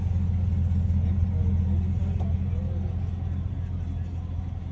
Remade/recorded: recorded